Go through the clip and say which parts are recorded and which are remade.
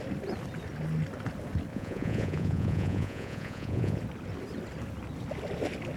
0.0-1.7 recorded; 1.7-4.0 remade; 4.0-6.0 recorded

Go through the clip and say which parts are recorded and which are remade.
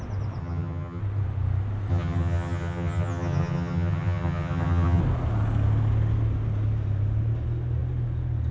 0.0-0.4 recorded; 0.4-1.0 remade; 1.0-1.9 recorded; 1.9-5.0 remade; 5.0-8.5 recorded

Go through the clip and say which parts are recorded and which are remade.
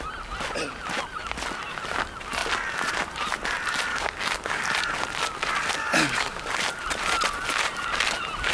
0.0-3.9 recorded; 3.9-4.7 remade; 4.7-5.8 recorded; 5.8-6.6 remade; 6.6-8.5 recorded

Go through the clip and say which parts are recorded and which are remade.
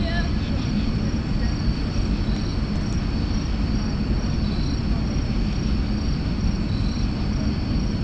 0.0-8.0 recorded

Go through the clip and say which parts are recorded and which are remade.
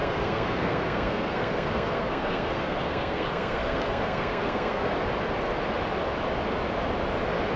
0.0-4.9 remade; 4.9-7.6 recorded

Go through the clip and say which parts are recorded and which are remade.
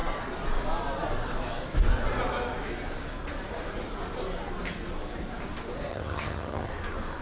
0.0-5.9 recorded; 5.9-6.7 remade; 6.7-7.2 recorded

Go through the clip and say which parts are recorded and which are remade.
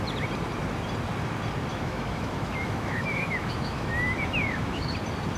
0.0-1.7 recorded; 1.7-4.9 remade; 4.9-5.4 recorded